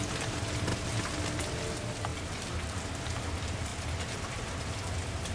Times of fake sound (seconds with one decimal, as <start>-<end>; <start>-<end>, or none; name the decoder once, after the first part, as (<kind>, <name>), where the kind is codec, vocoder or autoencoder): 0.0-0.7 (vocoder, BigVGAN v2); 1.4-3.7; 4.3-5.3

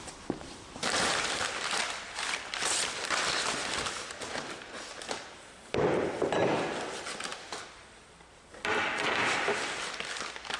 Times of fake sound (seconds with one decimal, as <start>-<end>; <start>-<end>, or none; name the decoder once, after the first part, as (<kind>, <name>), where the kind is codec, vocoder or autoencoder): 0.0-10.6 (vocoder, BigVGAN v2)

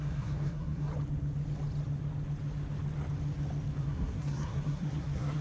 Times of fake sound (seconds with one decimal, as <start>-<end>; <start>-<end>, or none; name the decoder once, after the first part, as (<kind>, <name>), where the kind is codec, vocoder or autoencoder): 0.0-0.9 (codec, SNAC); 3.8-5.4

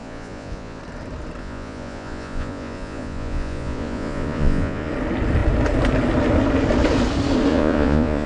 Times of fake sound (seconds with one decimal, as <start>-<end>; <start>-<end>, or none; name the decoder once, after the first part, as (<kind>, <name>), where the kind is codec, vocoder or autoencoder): 0.0-0.8 (vocoder, Vocos); 1.4-4.9; 7.5-8.3

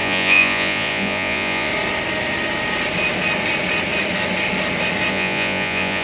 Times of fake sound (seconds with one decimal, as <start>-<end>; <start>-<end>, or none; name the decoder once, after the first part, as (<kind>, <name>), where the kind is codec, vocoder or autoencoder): 0.0-1.7 (vocoder, Vocos); 5.1-6.0